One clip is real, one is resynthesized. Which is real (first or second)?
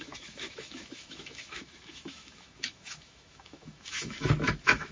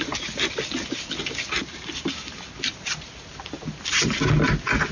second